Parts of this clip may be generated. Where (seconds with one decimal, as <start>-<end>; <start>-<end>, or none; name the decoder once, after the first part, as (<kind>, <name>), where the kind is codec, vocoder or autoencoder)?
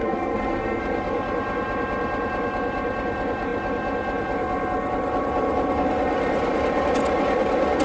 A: 0.0-0.8 (codec, SNAC)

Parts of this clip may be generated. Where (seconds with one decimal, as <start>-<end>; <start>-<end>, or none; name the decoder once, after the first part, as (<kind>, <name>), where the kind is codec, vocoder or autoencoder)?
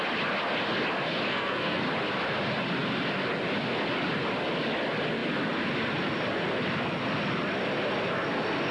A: 1.3-1.8 (codec, SNAC)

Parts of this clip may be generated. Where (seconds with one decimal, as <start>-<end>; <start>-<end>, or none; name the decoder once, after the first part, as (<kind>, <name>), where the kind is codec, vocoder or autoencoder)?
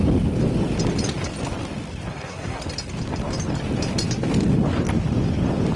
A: 2.1-2.6 (codec, SNAC)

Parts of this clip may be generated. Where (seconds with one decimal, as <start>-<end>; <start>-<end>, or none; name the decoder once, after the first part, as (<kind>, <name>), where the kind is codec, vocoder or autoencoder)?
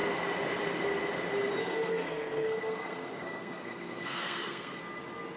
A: 1.6-4.8 (codec, SNAC)